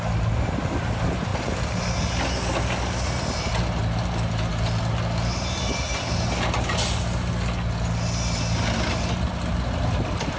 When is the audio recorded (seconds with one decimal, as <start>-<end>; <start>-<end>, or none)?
0.0-10.4